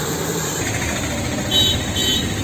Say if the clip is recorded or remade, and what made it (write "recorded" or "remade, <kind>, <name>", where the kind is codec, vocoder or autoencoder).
recorded